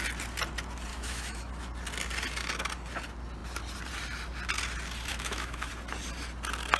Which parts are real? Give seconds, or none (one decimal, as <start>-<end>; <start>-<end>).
0.0-0.9; 1.5-5.1; 5.7-6.8